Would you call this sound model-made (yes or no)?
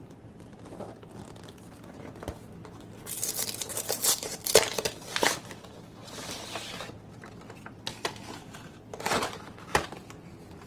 no